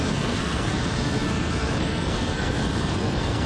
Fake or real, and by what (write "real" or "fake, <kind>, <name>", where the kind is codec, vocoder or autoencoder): fake, codec, SNAC